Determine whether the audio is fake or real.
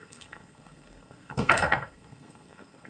fake